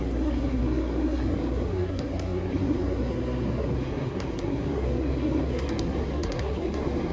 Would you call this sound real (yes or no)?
no